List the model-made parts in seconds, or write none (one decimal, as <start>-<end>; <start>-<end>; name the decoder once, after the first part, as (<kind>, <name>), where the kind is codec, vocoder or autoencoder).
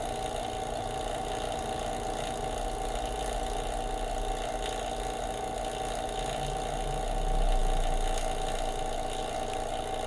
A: none